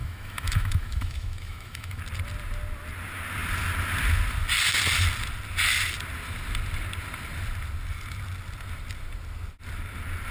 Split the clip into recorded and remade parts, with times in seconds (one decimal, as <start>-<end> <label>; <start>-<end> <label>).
0.0-2.0 remade; 2.0-10.3 recorded